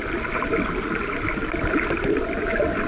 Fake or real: real